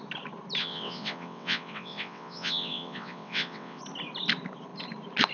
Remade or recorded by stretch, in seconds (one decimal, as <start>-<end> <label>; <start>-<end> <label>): 0.0-0.6 recorded; 0.6-3.8 remade; 3.8-5.3 recorded